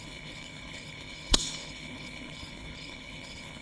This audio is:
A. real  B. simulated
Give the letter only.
B